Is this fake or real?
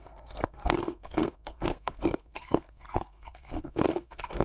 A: fake